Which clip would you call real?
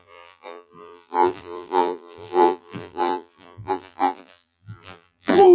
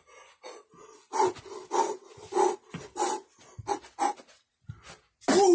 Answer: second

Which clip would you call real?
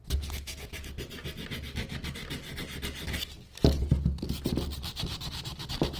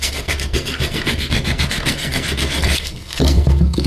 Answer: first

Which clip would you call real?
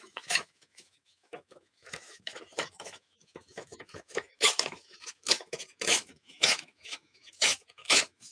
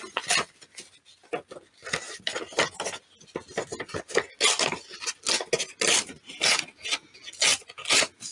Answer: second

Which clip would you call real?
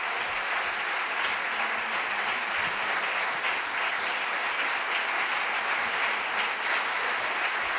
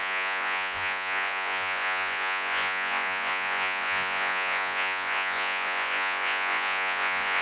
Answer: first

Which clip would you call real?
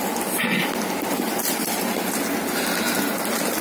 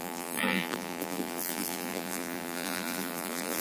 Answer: first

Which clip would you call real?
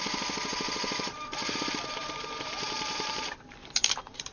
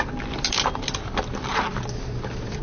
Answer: second